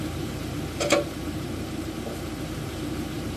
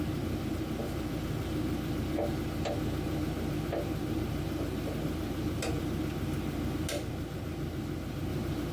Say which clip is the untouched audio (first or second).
second